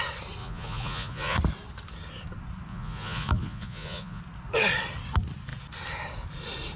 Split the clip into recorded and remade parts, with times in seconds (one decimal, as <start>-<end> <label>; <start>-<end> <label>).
0.0-0.4 recorded; 0.4-1.4 remade; 1.4-2.7 recorded; 2.7-4.2 remade; 4.2-6.8 recorded